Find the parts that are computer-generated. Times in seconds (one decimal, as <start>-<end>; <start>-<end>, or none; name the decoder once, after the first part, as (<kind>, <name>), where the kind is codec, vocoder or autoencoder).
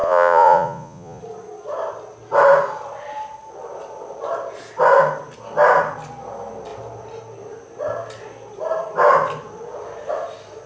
0.0-1.2 (vocoder, Vocos)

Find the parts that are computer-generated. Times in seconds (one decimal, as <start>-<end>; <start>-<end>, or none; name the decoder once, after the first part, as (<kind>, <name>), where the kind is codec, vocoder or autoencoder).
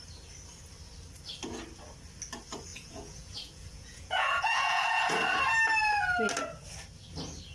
2.7-5.0 (vocoder, Vocos)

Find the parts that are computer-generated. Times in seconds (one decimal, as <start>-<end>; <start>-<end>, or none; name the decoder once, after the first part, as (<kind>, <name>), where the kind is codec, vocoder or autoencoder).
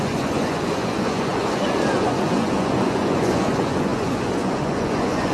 0.0-5.3 (vocoder, Vocos)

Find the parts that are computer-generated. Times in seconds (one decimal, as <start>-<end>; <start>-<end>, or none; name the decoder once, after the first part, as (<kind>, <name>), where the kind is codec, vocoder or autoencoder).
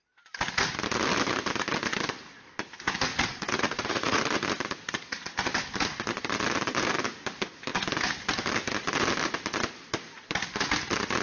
3.1-4.2 (vocoder, Vocos)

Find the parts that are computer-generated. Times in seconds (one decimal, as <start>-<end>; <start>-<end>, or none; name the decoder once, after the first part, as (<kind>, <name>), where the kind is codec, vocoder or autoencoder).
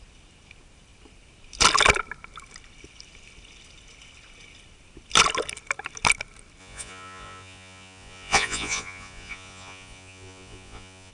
6.6-11.1 (vocoder, Vocos)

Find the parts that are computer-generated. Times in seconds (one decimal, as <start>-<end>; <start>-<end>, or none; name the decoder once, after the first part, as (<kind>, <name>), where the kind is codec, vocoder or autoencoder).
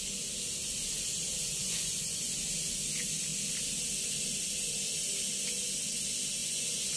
1.6-2.2 (vocoder, Vocos); 6.4-7.0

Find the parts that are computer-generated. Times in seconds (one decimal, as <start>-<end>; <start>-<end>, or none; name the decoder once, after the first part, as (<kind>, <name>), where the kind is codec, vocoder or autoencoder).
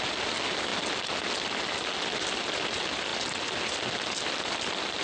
none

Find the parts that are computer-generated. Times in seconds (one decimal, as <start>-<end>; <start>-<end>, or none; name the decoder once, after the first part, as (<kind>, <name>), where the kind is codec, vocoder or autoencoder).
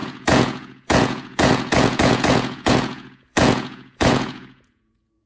0.0-5.3 (vocoder, Vocos)